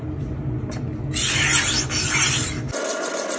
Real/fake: real